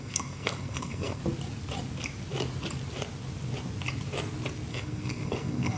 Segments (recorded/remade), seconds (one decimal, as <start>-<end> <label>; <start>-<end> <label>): 0.0-1.2 remade; 1.2-4.7 recorded; 4.7-5.8 remade